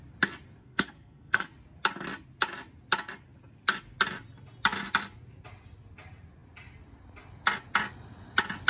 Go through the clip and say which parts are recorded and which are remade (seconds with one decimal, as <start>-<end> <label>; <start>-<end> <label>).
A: 0.0-0.6 recorded; 0.6-1.5 remade; 1.5-8.7 recorded